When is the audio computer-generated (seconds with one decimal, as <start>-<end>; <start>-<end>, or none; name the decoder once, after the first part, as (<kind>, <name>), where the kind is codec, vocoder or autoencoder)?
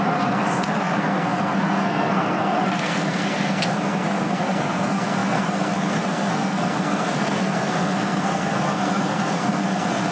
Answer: 0.0-10.1 (codec, SNAC)